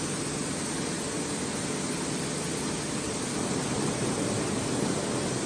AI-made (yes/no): no